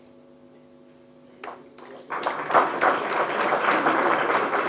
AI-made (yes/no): no